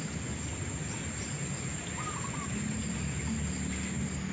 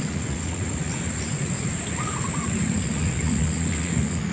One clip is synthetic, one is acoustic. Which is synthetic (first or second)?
second